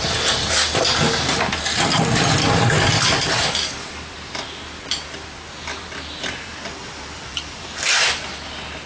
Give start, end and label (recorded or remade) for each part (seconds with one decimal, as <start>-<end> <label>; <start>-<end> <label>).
0.0-1.9 recorded; 1.9-4.1 remade; 4.1-6.2 recorded; 6.2-8.3 remade; 8.3-8.9 recorded